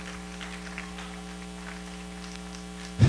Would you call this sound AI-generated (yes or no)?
no